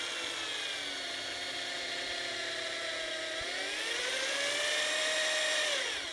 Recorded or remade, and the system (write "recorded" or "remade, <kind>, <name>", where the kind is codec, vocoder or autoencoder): recorded